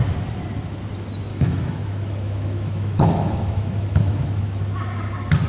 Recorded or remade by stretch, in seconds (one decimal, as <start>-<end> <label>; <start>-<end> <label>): 0.0-1.3 recorded; 1.3-4.6 remade; 4.6-5.5 recorded